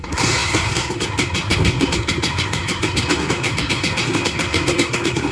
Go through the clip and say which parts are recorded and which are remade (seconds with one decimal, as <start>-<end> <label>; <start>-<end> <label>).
0.0-5.3 remade